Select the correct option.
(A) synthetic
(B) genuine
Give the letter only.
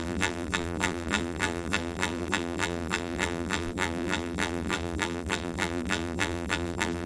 A